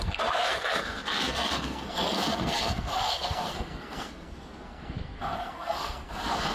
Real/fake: fake